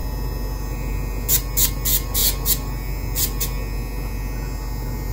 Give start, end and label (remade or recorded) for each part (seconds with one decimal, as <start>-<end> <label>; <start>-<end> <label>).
0.0-5.1 recorded